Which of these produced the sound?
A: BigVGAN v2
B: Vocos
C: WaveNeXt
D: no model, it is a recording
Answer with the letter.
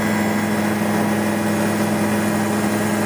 D